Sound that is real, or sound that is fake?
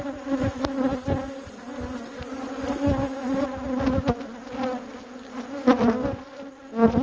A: real